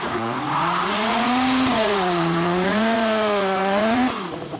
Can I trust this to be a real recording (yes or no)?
no